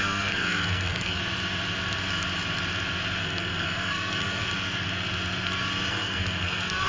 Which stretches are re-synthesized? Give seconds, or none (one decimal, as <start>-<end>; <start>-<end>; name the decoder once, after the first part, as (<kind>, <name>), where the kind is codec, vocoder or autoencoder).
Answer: 0.0-1.2 (codec, SNAC); 3.2-4.5; 5.9-6.9